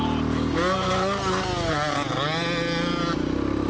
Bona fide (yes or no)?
yes